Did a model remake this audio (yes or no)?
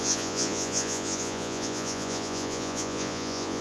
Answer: yes